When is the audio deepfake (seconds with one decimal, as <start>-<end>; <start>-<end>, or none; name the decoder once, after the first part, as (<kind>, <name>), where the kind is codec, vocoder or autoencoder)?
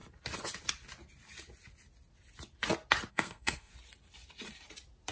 3.1-3.7 (codec, SNAC)